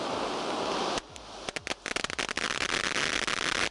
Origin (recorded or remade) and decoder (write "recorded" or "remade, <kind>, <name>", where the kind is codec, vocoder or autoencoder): recorded